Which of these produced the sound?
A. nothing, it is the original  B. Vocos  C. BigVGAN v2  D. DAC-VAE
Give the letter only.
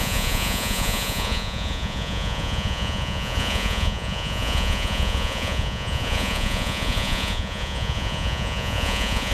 B